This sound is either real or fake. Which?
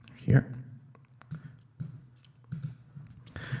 fake